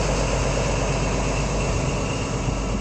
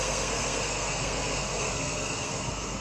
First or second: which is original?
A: first